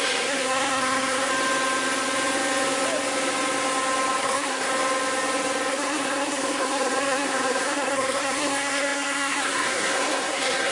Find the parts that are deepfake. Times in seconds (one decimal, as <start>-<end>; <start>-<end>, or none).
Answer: 0.0-1.3; 4.2-4.7; 5.7-10.7